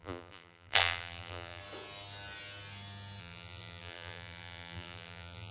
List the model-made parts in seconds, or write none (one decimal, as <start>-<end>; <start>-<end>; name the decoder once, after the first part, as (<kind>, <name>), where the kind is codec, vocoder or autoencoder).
0.0-1.6 (vocoder, BigVGAN v2); 3.2-5.5